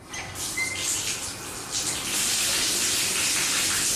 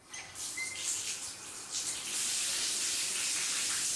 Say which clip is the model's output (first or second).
second